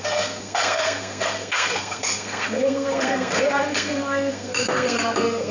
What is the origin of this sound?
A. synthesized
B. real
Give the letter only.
A